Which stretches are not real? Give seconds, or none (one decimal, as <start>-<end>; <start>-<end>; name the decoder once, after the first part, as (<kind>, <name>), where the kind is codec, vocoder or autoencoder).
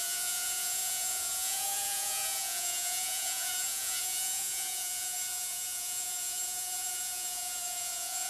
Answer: 0.0-8.3 (vocoder, Vocos)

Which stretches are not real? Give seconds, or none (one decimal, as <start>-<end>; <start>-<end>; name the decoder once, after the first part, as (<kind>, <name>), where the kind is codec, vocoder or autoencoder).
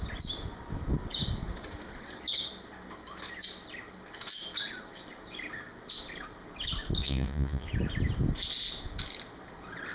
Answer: 7.0-7.7 (vocoder, Vocos)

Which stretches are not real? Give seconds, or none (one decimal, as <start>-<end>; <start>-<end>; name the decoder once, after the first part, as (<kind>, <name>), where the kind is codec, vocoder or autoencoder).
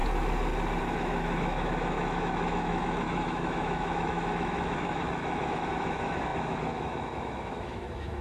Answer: 0.8-8.2 (autoencoder, DAC-VAE)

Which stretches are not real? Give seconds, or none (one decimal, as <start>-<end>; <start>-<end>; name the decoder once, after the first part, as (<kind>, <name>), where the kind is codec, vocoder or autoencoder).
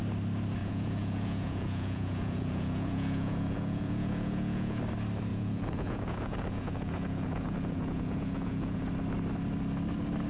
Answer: 0.6-4.8 (vocoder, Vocos); 5.3-8.9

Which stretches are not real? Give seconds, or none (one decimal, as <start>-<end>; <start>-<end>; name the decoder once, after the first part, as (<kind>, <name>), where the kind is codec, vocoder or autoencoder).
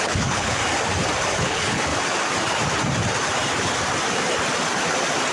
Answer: 0.0-0.6 (codec, HILCodec); 1.4-1.9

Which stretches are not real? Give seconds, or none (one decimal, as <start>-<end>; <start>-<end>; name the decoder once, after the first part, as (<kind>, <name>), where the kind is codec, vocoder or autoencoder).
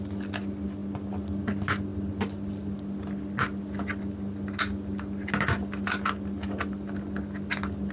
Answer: none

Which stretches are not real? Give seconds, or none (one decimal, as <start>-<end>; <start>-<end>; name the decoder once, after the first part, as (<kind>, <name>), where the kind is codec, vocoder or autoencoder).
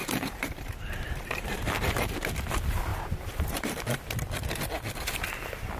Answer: 0.0-2.3 (vocoder, BigVGAN v2); 2.9-3.8